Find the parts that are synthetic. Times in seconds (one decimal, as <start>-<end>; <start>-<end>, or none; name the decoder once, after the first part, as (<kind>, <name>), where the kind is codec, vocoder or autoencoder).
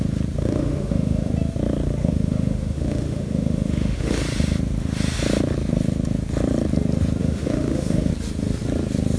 0.4-1.3 (autoencoder, DAC-VAE); 2.0-4.2; 7.2-8.1